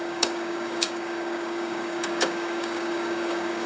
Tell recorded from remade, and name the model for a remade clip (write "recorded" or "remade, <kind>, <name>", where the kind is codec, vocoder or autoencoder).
remade, codec, DAC